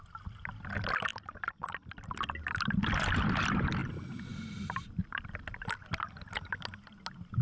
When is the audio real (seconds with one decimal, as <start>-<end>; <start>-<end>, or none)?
0.0-7.4